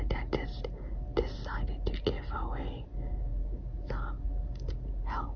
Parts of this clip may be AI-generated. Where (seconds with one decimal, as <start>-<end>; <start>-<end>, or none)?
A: none